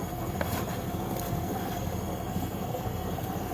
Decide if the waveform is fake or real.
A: fake